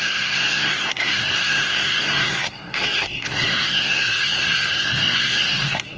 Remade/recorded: remade